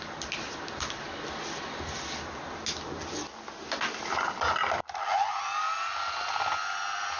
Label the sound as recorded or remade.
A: recorded